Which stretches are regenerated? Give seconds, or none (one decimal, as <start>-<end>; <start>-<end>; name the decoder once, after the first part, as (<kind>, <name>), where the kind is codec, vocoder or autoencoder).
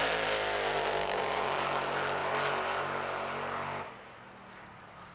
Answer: 1.0-1.6 (codec, DAC)